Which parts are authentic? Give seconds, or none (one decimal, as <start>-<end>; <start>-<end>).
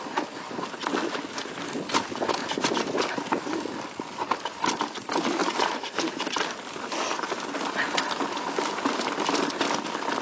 0.0-5.4; 6.2-10.2